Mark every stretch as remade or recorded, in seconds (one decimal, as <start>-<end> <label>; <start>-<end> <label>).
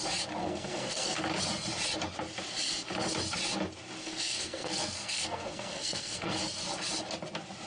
0.0-0.4 recorded; 0.4-1.2 remade; 1.2-4.0 recorded; 4.0-6.4 remade; 6.4-7.7 recorded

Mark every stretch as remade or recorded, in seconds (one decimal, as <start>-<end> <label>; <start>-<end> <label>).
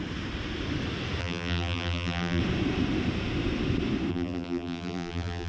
0.0-1.2 recorded; 1.2-2.4 remade; 2.4-4.1 recorded; 4.1-5.5 remade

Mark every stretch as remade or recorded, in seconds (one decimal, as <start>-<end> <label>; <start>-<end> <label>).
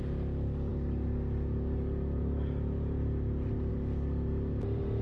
0.0-5.0 recorded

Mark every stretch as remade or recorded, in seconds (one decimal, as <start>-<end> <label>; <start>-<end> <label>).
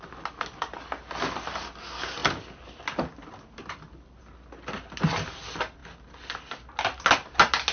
0.0-7.7 recorded